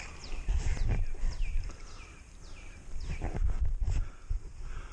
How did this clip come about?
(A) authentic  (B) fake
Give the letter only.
B